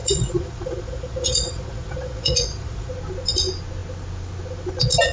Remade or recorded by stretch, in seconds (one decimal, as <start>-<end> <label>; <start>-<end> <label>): 0.0-2.9 remade; 2.9-5.1 recorded